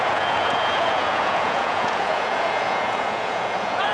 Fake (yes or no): yes